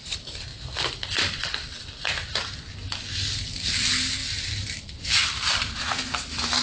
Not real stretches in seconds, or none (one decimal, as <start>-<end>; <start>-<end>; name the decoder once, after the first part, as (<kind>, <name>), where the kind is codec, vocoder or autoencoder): 4.2-5.5 (vocoder, BigVGAN v2)